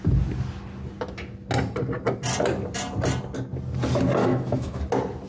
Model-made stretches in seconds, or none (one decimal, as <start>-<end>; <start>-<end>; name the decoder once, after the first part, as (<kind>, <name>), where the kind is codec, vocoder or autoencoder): 4.2-4.8 (autoencoder, DAC-VAE)